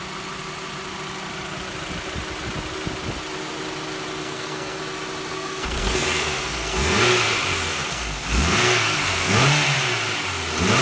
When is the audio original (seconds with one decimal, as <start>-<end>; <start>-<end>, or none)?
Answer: 0.0-4.2; 4.8-5.3; 7.3-7.7; 9.4-10.8